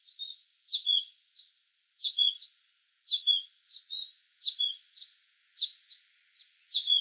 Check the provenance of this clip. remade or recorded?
remade